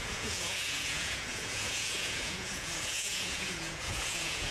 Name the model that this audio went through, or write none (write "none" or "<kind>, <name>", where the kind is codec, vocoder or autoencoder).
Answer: vocoder, Vocos